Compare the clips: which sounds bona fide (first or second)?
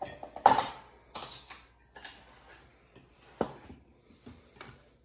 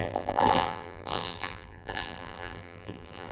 first